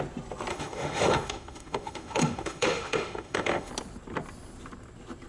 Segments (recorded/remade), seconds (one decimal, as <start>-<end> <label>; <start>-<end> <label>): 0.0-0.5 recorded; 0.5-3.7 remade; 3.7-5.3 recorded